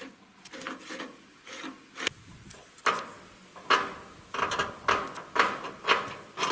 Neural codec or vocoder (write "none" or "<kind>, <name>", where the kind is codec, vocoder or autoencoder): none